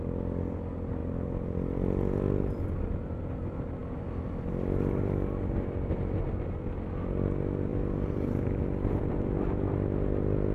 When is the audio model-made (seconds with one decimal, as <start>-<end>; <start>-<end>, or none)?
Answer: 1.0-3.2; 7.7-9.1